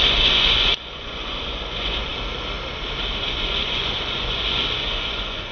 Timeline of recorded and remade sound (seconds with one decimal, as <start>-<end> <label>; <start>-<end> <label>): 0.0-2.1 remade; 2.1-3.2 recorded; 3.2-5.5 remade